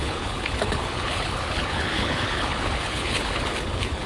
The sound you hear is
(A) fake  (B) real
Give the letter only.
A